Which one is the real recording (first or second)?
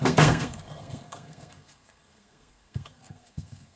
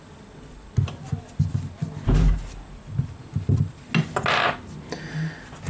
second